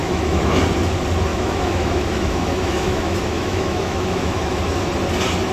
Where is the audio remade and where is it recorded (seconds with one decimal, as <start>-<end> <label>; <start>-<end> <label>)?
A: 0.0-0.6 remade; 0.6-1.3 recorded; 1.3-4.6 remade; 4.6-5.5 recorded